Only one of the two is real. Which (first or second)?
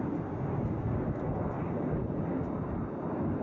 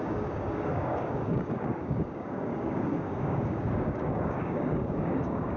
first